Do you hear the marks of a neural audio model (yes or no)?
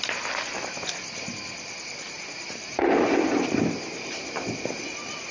no